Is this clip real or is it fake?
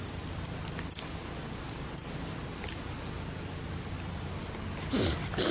real